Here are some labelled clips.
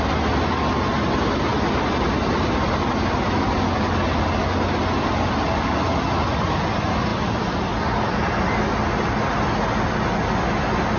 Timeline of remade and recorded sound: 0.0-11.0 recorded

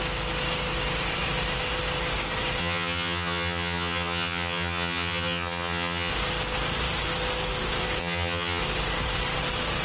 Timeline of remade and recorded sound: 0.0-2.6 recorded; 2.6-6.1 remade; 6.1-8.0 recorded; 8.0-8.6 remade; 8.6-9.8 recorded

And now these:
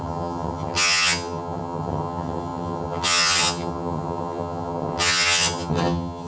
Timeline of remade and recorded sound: 0.0-6.3 remade